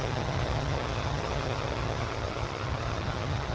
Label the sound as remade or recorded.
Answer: remade